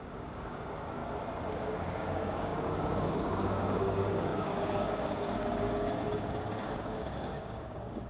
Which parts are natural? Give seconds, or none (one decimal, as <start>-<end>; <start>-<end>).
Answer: 1.0-1.5